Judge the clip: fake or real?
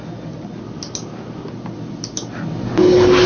real